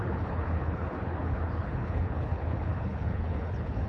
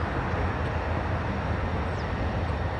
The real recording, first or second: second